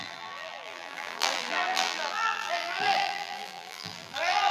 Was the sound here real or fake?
fake